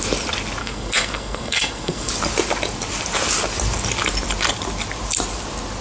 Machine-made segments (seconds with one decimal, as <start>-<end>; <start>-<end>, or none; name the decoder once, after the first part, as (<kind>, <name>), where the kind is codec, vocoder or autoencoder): 0.6-2.1 (codec, SNAC)